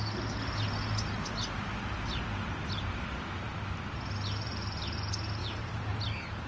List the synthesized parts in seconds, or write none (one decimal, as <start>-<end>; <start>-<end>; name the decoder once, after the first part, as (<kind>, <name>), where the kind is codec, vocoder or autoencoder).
2.6-3.5 (vocoder, BigVGAN v2); 5.4-6.0